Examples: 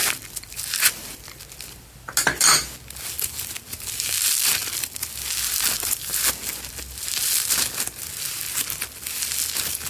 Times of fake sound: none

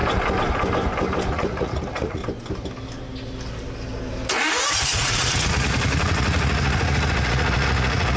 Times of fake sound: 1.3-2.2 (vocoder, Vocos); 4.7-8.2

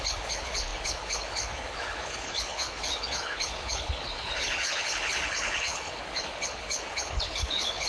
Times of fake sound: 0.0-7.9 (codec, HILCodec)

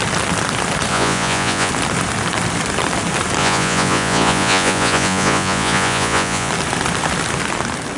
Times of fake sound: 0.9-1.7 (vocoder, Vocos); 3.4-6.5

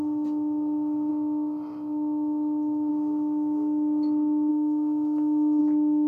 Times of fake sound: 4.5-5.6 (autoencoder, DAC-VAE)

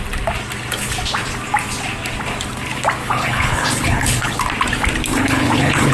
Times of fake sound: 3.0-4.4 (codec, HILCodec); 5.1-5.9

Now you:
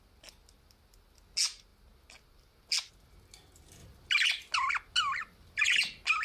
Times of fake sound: none